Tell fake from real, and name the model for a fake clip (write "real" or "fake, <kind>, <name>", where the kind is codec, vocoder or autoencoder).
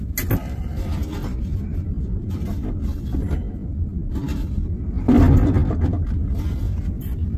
real